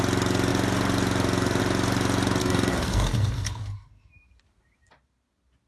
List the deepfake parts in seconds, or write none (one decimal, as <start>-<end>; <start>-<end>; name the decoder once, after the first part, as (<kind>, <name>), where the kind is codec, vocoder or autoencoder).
2.4-4.3 (codec, SNAC)